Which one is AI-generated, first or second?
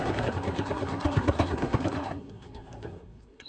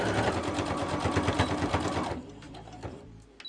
first